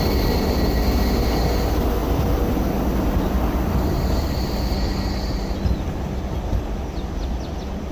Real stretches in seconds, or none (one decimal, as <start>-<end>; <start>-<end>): 0.0-7.9